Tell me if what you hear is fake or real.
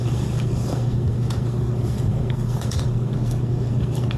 fake